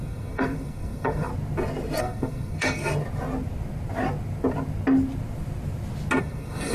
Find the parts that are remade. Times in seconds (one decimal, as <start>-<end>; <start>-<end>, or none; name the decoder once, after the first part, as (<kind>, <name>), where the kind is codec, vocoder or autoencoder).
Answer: 0.0-1.3 (codec, SNAC); 2.0-2.8; 6.2-6.7